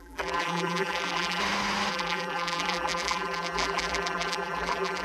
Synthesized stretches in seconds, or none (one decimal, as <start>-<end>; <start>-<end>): 0.0-1.4; 1.9-5.0